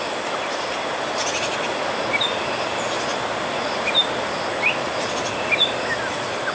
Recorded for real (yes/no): yes